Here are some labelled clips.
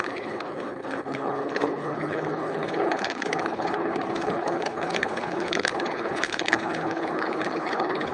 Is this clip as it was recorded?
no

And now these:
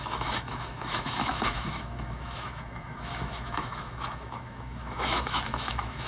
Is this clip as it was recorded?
no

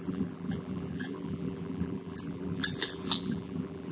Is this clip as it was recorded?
no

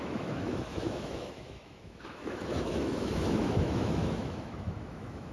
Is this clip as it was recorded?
no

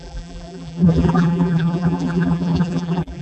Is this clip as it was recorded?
no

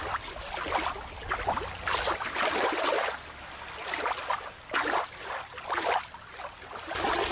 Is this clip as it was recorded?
yes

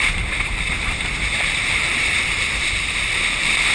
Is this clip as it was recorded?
no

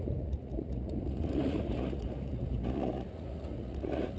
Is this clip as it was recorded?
no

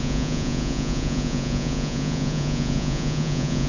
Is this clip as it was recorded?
no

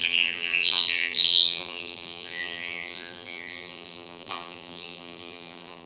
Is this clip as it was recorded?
no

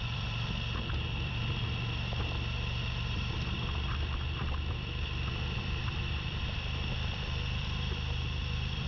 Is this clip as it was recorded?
no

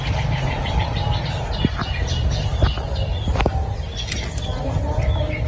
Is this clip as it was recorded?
yes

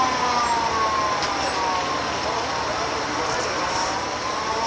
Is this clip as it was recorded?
yes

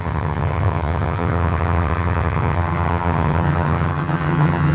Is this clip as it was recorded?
no